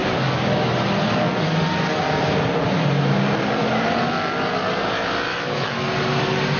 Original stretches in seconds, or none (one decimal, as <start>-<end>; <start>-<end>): 0.0-5.3; 5.8-6.6